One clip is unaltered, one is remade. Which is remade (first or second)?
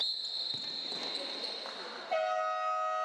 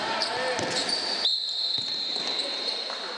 second